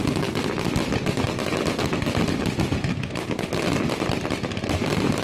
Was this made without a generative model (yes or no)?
yes